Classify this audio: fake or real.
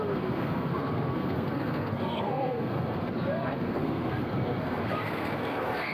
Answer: fake